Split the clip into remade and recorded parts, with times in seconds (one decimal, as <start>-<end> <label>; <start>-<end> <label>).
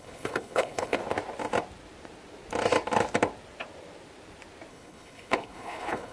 0.0-1.0 remade; 1.0-4.7 recorded; 4.7-6.1 remade